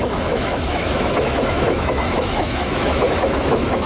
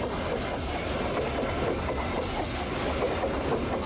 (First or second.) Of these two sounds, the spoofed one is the first